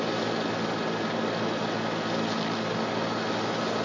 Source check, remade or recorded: recorded